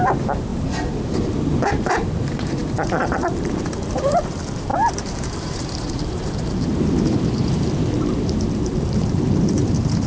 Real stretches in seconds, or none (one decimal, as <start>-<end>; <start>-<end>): 0.5-1.7